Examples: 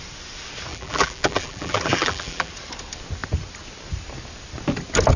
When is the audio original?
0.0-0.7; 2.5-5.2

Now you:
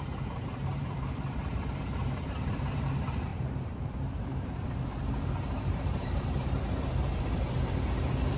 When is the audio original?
none

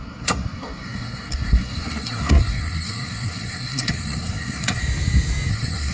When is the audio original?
4.8-5.5

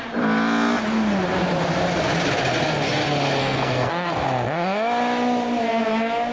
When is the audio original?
0.0-3.4; 3.9-6.3